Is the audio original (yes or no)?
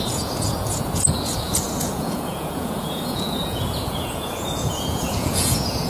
no